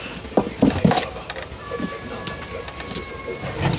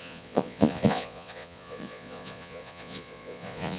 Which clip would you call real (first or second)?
first